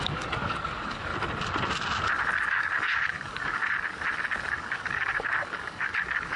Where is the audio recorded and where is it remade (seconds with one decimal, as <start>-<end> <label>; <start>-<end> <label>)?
0.0-1.1 remade; 1.1-2.4 recorded; 2.4-3.6 remade; 3.6-4.5 recorded; 4.5-6.4 remade